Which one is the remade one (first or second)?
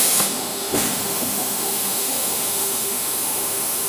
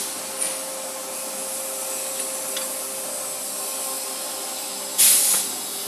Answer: first